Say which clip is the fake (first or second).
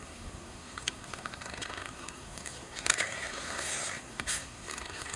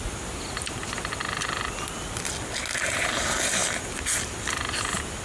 first